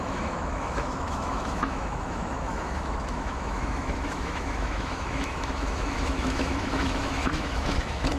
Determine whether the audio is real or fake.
fake